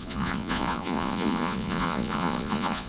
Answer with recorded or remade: remade